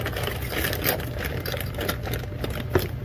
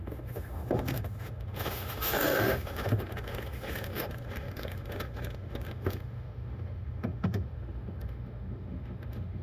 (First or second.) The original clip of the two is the first